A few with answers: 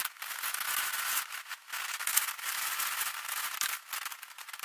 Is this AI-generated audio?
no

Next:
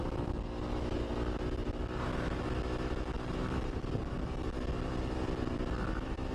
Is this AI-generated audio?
no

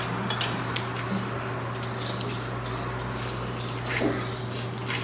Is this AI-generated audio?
no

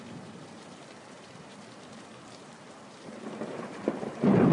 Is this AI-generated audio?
yes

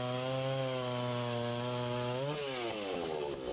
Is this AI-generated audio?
no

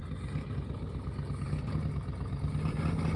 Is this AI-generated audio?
no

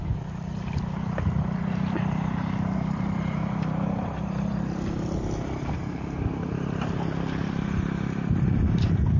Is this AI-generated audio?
yes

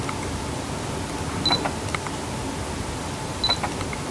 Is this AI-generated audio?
no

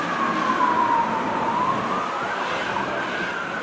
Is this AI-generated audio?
yes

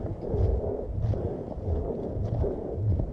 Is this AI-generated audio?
no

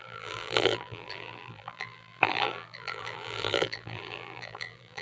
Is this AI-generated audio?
yes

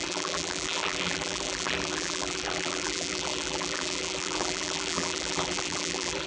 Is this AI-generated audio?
yes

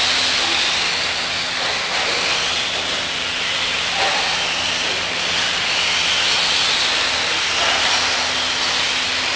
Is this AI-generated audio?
no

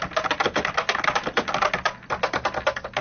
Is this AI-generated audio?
no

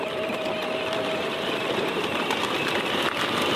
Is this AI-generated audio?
yes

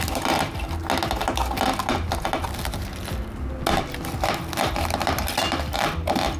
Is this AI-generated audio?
no